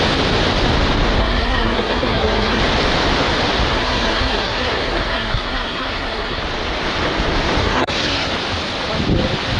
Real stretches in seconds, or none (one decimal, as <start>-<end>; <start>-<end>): 0.0-1.2; 2.6-3.7; 6.4-7.6; 8.3-9.6